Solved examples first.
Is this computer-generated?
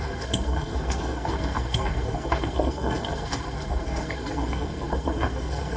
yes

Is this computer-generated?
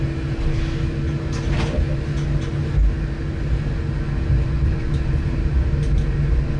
no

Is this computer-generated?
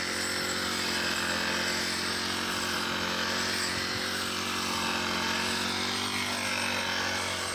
no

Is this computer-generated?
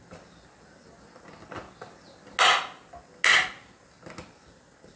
no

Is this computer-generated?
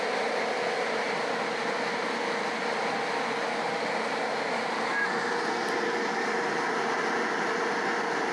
no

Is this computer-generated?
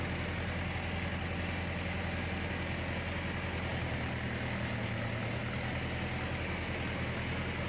no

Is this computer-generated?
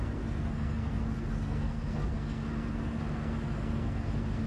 yes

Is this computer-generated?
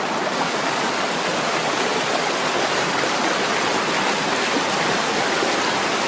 no